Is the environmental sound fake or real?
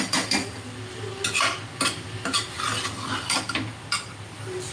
real